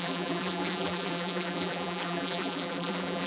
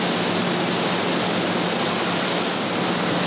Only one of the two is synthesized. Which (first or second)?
first